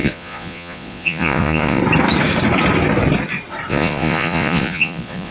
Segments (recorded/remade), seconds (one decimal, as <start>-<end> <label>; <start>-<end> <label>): 0.0-1.8 remade; 1.8-3.7 recorded; 3.7-5.3 remade